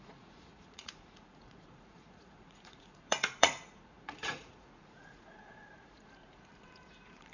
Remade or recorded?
remade